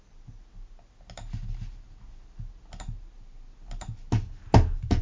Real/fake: real